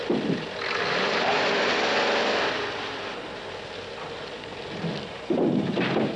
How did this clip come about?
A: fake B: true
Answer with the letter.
B